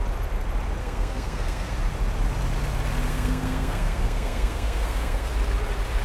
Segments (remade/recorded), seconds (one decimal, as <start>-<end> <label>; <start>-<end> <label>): 0.0-0.8 recorded; 0.8-1.8 remade; 1.8-3.1 recorded; 3.1-5.3 remade; 5.3-6.0 recorded